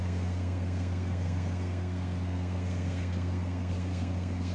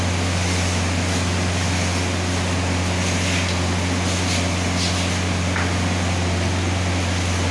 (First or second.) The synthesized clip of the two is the first